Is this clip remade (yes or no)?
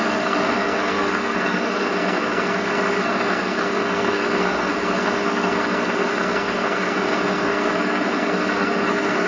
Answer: yes